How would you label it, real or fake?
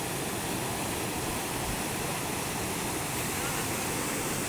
real